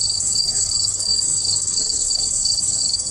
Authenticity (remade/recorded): remade